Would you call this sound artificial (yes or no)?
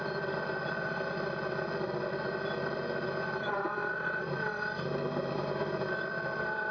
yes